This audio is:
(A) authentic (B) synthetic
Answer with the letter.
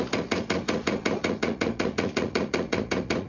B